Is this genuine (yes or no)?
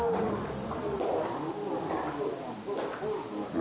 yes